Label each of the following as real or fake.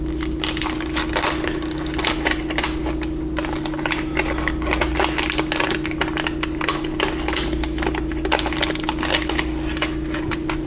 real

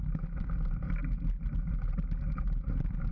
real